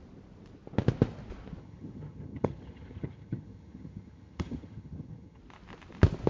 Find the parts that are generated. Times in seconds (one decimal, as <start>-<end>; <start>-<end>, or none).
1.6-5.4